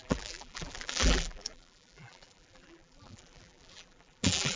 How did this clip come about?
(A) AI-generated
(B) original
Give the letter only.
A